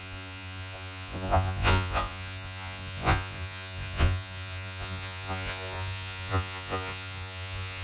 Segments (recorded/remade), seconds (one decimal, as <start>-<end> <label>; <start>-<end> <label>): 0.0-7.8 remade

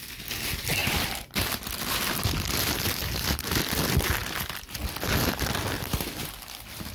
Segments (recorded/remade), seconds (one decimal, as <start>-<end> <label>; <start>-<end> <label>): 0.0-0.8 recorded; 0.8-3.7 remade; 3.7-6.9 recorded

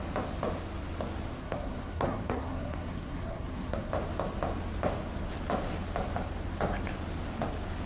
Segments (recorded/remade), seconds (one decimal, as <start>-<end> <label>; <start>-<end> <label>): 0.0-1.4 recorded; 1.4-3.9 remade; 3.9-7.9 recorded